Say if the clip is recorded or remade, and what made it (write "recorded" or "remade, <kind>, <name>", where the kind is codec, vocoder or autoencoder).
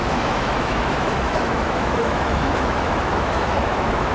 remade, autoencoder, DAC-VAE